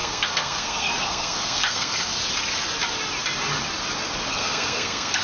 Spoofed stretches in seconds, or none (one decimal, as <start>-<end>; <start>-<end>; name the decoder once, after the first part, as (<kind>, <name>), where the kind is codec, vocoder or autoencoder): 0.0-2.1 (codec, SNAC); 4.3-5.2